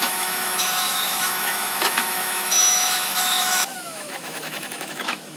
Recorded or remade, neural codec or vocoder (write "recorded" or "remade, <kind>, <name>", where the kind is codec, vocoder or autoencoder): remade, autoencoder, DAC-VAE